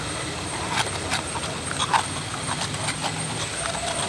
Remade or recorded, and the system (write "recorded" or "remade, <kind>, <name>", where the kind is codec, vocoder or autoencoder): recorded